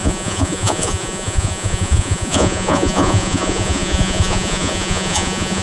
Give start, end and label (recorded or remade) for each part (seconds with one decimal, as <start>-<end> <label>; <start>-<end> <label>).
0.0-5.6 remade